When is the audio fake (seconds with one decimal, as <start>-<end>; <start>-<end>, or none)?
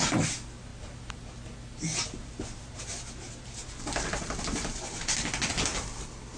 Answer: none